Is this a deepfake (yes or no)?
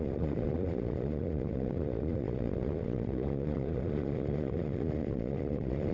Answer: yes